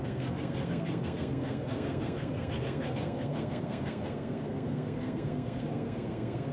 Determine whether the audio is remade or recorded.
remade